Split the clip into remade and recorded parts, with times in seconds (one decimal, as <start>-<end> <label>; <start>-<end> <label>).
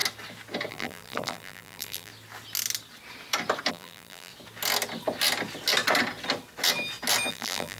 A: 0.0-0.7 recorded; 0.7-2.1 remade; 2.1-3.7 recorded; 3.7-4.3 remade; 4.3-7.3 recorded; 7.3-7.8 remade